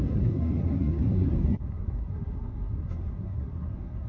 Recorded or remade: remade